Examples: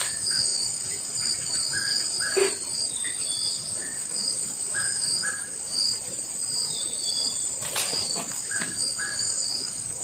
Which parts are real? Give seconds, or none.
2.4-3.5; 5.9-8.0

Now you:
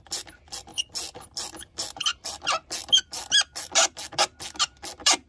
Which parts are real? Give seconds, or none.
0.0-5.3

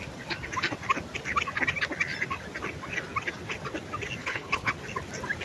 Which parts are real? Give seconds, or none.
0.0-4.2; 4.7-5.4

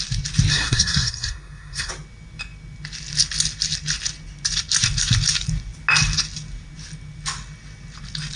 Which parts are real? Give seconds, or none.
0.0-0.5; 1.9-8.4

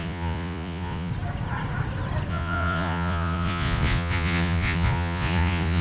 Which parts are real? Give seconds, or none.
1.1-2.3